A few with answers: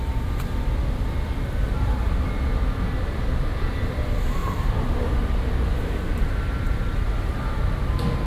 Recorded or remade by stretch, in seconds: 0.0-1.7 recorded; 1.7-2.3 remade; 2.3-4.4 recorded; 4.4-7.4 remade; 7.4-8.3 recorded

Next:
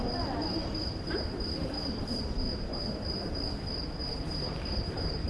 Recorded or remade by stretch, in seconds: 0.0-0.5 recorded; 0.5-2.2 remade; 2.2-2.7 recorded; 2.7-3.3 remade; 3.3-4.0 recorded; 4.0-5.3 remade

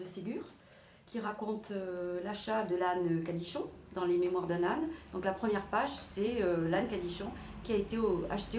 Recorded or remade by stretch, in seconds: 0.0-1.1 recorded; 1.1-2.8 remade; 2.8-6.0 recorded; 6.0-6.9 remade; 6.9-8.6 recorded

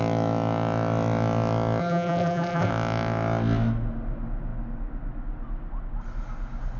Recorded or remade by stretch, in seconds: 0.0-1.8 recorded; 1.8-2.7 remade; 2.7-6.8 recorded

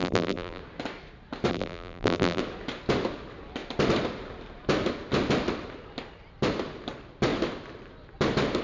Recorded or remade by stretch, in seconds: 0.0-0.6 remade; 0.6-1.5 recorded; 1.5-2.4 remade; 2.4-8.6 recorded

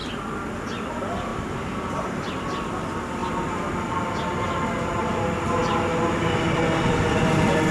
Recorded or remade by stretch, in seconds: 0.0-1.3 recorded; 1.3-1.9 remade; 1.9-7.7 recorded

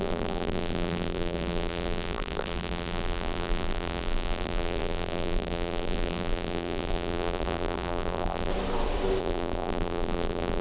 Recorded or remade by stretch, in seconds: 0.0-8.5 remade; 8.5-9.2 recorded; 9.2-10.6 remade